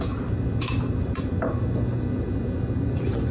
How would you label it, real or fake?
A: real